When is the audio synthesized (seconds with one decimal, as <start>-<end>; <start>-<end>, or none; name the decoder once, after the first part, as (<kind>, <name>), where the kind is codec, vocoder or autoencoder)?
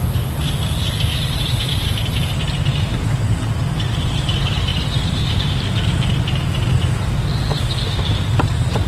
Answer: 1.1-2.0 (vocoder, BigVGAN v2); 4.7-6.8